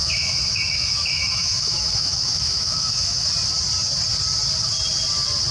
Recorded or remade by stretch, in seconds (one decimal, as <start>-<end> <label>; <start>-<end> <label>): 0.0-3.3 remade; 3.3-5.5 recorded